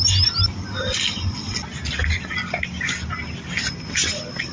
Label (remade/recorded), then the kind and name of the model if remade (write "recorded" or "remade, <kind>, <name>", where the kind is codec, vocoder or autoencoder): recorded